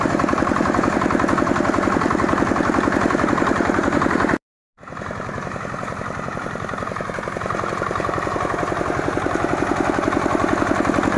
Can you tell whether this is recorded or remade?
remade